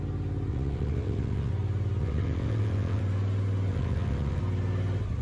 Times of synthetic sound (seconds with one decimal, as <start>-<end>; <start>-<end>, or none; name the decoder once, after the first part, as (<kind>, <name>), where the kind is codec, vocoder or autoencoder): 0.5-1.5 (vocoder, WaveNeXt); 2.0-3.0; 3.7-4.4